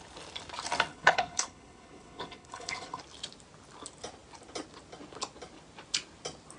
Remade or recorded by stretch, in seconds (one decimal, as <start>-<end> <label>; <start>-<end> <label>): 0.0-0.9 recorded; 0.9-3.0 remade; 3.0-6.6 recorded